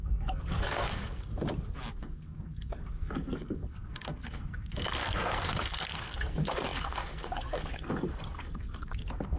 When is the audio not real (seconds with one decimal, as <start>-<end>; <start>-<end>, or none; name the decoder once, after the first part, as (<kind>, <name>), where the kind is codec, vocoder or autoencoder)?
0.0-1.3 (codec, SNAC); 1.9-9.4